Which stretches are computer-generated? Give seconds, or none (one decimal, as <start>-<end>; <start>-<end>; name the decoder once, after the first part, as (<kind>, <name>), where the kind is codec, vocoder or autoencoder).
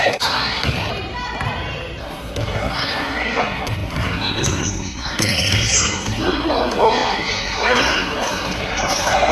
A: 0.0-0.9 (codec, SNAC); 2.0-9.3